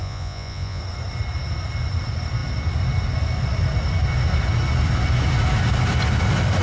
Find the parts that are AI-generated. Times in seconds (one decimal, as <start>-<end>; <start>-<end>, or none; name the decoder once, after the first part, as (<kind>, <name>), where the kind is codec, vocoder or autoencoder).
0.0-0.8 (vocoder, Vocos)